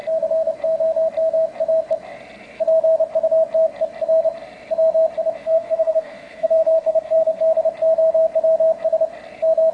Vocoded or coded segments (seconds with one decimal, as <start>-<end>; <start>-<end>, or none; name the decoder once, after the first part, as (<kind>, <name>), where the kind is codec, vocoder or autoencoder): 5.4-7.4 (codec, SNAC)